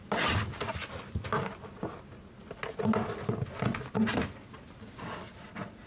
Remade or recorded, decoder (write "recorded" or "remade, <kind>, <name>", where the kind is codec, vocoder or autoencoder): recorded